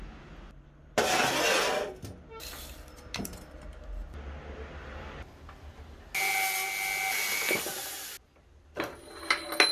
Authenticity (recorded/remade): recorded